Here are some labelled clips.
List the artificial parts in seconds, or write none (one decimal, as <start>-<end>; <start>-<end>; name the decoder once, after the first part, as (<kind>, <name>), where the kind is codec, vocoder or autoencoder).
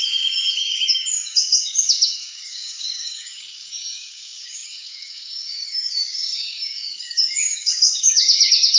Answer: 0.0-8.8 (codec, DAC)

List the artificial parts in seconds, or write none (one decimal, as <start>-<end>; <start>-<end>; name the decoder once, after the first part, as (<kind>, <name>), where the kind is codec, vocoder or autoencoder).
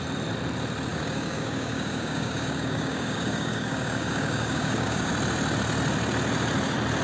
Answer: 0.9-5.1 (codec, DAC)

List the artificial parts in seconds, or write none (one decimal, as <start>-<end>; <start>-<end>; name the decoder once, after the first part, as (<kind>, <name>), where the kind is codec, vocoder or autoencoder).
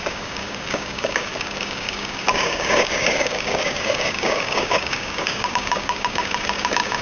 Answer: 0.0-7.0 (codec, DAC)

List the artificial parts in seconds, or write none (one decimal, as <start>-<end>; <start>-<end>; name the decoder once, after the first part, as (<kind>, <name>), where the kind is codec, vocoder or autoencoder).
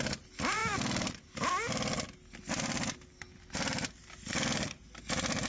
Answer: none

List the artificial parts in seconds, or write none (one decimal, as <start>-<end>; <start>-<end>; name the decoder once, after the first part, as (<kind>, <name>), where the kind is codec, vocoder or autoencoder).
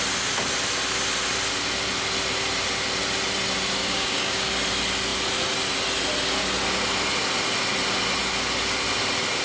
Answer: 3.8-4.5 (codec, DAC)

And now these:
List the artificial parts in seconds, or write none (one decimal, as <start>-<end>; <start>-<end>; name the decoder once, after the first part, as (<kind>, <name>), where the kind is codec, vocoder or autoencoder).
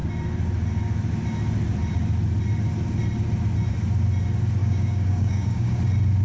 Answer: 4.6-5.8 (codec, DAC)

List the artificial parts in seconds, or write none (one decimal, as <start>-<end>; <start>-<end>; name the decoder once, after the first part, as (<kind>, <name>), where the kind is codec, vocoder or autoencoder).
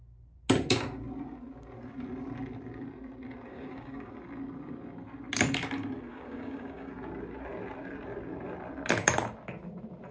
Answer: 3.5-4.1 (codec, DAC); 6.1-6.9